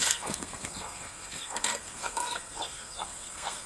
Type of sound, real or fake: fake